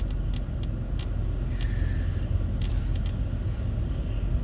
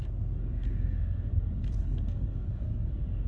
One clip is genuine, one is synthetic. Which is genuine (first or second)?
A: first